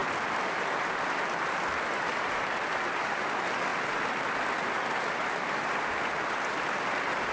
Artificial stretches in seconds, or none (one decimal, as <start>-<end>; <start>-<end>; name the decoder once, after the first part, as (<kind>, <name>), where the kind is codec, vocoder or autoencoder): none